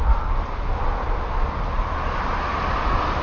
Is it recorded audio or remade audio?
recorded